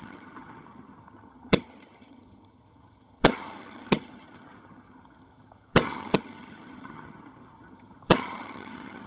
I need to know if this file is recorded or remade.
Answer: remade